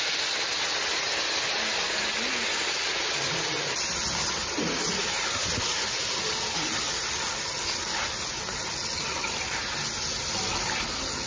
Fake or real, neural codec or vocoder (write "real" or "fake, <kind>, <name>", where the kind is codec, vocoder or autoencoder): real